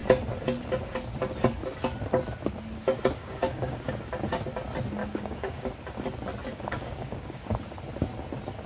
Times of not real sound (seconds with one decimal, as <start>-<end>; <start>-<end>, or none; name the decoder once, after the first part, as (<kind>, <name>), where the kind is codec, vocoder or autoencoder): 3.2-3.9 (codec, DAC); 5.0-5.6; 6.5-7.5